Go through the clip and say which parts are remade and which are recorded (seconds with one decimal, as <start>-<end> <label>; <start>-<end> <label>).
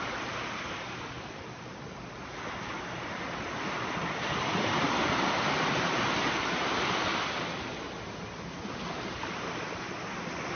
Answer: 0.0-10.6 recorded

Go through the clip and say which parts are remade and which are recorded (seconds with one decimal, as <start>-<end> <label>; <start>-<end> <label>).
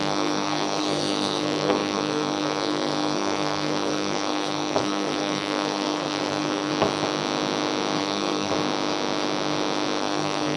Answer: 0.0-6.7 remade; 6.7-8.0 recorded; 8.0-8.5 remade; 8.5-10.0 recorded; 10.0-10.6 remade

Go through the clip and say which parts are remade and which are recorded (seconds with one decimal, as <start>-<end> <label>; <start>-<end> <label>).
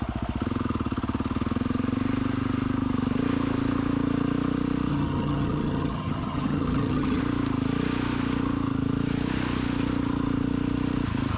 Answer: 0.0-4.9 recorded; 4.9-7.2 remade; 7.2-11.4 recorded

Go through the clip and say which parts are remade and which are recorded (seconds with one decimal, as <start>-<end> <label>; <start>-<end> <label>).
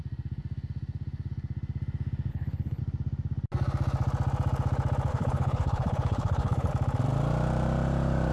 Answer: 0.0-2.3 recorded; 2.3-2.8 remade; 2.8-5.1 recorded; 5.1-6.7 remade; 6.7-8.3 recorded